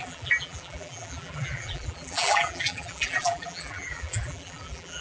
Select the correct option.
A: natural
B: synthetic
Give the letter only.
B